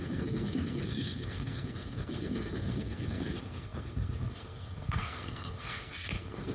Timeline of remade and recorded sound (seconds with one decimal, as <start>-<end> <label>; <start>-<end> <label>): 0.0-6.5 remade